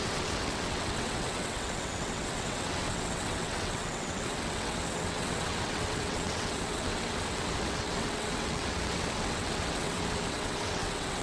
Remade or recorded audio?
remade